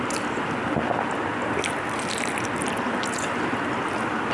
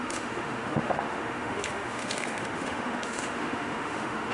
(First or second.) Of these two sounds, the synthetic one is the second